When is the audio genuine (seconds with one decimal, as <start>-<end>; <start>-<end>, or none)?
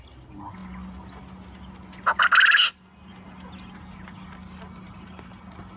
0.0-5.8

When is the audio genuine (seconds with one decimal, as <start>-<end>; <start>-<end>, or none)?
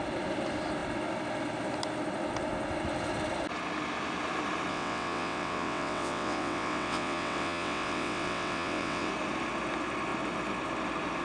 0.0-4.7; 9.1-11.2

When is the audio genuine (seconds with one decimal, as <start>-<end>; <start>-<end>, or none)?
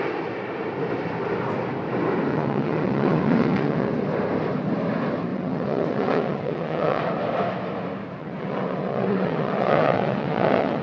0.0-2.3; 3.9-5.3; 7.0-8.2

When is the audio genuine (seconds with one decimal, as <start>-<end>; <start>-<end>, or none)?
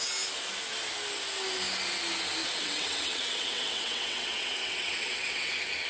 0.0-2.4; 5.5-5.9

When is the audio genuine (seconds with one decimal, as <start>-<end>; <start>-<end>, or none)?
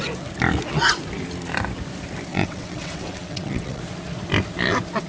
0.0-2.3; 3.8-5.1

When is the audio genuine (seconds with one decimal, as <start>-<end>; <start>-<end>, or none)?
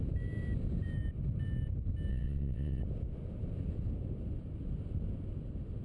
0.0-2.1; 2.8-5.8